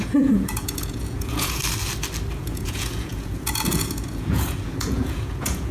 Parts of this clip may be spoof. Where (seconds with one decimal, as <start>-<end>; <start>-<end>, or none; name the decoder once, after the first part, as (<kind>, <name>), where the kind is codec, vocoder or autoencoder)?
0.0-1.6 (vocoder, Vocos); 2.4-5.7